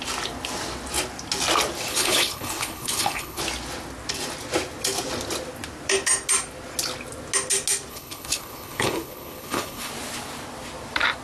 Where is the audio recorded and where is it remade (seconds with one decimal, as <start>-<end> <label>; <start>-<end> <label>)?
0.0-1.9 recorded; 1.9-3.4 remade; 3.4-7.9 recorded; 7.9-9.9 remade; 9.9-11.2 recorded